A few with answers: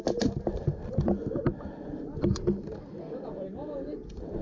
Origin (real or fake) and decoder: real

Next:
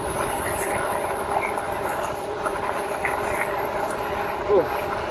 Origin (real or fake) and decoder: real